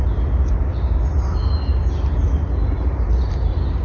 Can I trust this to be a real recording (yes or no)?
yes